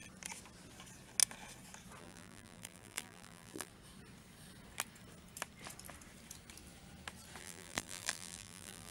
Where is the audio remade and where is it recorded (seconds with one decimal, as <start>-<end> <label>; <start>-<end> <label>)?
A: 0.0-2.0 recorded; 2.0-3.7 remade; 3.7-7.4 recorded; 7.4-8.9 remade